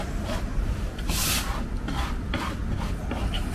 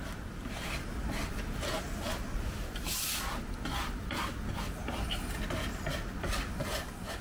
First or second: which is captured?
second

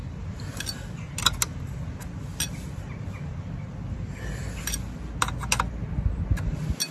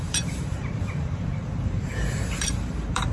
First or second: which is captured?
first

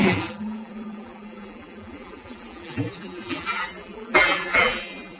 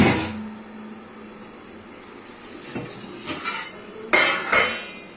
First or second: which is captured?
second